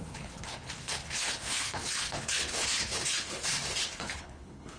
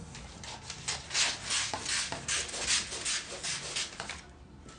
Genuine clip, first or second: second